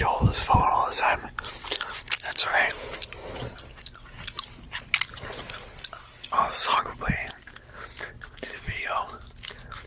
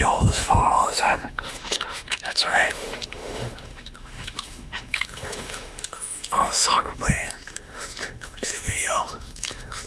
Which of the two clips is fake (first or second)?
second